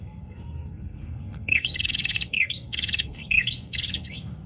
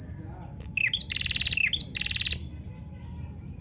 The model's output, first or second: first